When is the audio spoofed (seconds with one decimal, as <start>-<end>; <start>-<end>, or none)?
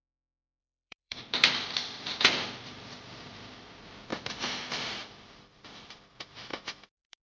0.6-1.7; 4.1-6.1; 6.5-7.2